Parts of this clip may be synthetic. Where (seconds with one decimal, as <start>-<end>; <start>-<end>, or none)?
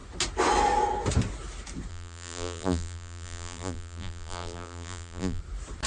1.9-5.4